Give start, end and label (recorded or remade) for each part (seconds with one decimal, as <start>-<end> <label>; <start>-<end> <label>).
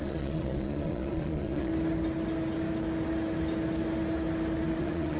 0.0-1.7 remade; 1.7-4.8 recorded; 4.8-5.2 remade